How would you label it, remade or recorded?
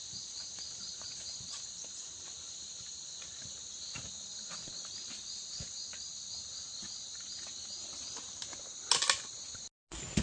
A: recorded